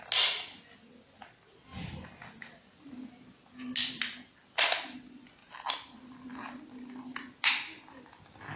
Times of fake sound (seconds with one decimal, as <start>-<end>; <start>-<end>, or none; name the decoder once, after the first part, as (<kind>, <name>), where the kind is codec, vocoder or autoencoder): none